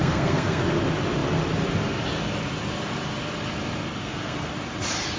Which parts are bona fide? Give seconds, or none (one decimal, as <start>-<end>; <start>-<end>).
0.6-4.0; 4.5-5.2